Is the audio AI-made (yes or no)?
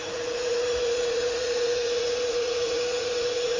yes